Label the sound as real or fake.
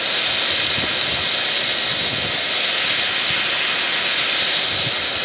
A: real